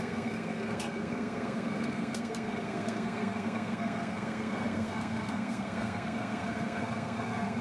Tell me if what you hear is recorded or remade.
remade